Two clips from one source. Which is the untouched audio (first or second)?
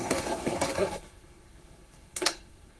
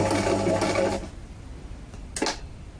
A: second